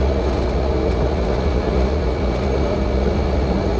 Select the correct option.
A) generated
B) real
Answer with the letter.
A